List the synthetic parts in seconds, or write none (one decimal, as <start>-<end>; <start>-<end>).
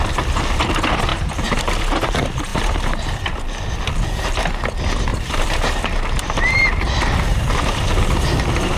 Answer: 1.1-1.6; 2.5-3.4; 5.1-8.8